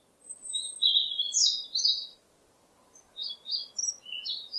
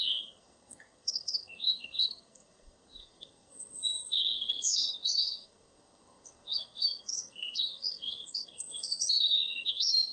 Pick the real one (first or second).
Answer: first